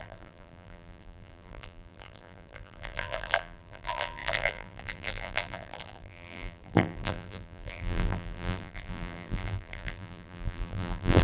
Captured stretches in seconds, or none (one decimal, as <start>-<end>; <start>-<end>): none